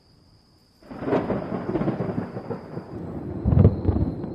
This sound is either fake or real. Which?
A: real